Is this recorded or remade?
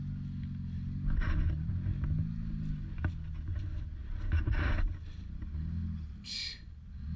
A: recorded